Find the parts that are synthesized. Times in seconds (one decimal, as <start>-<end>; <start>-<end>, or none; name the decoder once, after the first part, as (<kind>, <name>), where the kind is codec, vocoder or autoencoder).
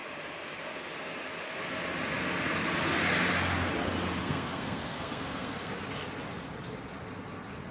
4.2-5.7 (codec, SNAC)